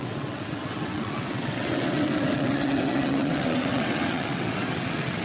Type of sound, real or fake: fake